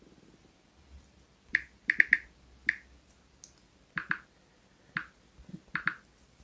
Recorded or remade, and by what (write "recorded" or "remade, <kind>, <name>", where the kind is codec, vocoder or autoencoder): recorded